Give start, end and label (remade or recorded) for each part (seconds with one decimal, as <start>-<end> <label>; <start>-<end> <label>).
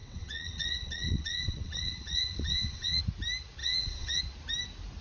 0.0-3.0 remade; 3.0-3.6 recorded; 3.6-4.2 remade; 4.2-5.0 recorded